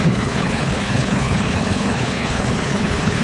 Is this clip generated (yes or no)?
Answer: yes